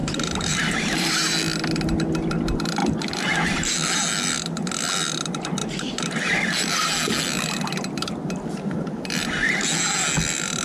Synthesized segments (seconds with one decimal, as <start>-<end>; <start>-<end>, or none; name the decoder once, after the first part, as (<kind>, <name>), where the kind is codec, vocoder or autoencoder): 0.0-1.1 (vocoder, BigVGAN v2); 5.6-6.3